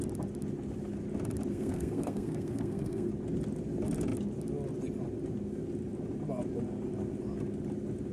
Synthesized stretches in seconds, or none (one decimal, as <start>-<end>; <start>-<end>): 1.5-3.1